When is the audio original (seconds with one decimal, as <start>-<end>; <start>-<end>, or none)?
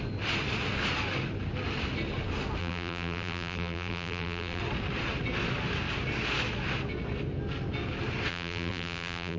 0.0-2.6; 4.6-8.3